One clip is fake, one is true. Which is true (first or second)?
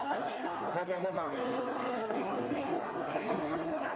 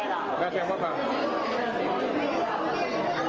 second